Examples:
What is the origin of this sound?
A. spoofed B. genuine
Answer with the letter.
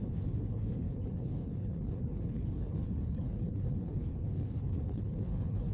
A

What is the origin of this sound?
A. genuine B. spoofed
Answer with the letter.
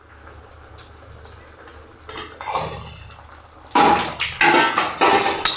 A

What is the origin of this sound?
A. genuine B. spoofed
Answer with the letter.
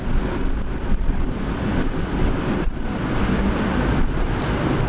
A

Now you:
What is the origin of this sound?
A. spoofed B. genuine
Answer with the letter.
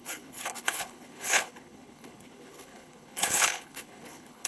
A